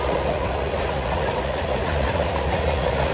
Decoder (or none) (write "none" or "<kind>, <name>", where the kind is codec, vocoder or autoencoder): vocoder, Vocos